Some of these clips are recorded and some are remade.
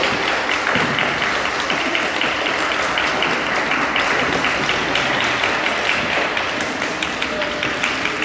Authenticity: remade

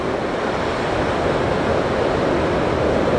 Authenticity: recorded